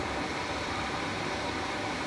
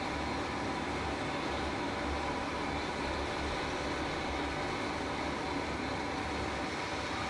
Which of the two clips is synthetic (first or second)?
first